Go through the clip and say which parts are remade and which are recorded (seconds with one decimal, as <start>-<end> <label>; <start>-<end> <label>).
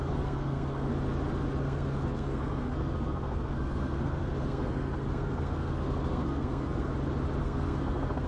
0.0-0.9 remade; 0.9-1.6 recorded; 1.6-6.9 remade; 6.9-7.4 recorded; 7.4-8.3 remade